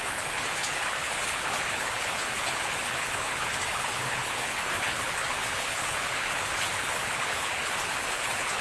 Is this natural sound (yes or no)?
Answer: no